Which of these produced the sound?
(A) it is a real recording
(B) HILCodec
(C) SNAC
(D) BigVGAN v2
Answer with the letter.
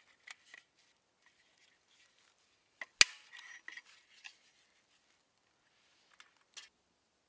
A